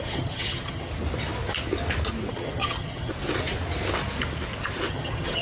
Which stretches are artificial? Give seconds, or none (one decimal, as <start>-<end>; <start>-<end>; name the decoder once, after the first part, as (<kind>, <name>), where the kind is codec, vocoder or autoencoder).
0.0-0.9 (vocoder, HiFi-GAN); 2.3-3.1; 4.9-5.4